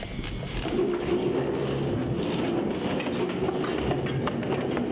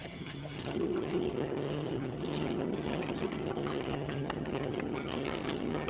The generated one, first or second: second